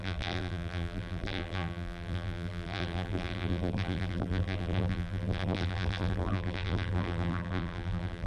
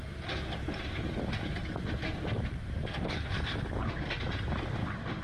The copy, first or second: first